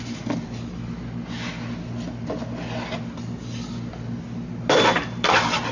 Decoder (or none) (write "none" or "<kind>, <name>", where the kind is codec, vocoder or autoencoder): none